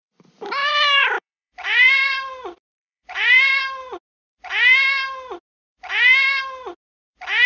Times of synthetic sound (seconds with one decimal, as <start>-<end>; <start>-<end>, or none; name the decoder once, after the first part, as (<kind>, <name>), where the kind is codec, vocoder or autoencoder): 0.6-3.6 (vocoder, BigVGAN v2)